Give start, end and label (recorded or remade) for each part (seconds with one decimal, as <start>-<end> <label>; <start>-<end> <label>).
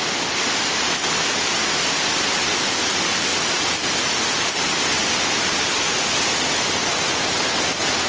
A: 0.0-2.8 remade; 2.8-3.3 recorded; 3.3-4.5 remade; 4.5-8.1 recorded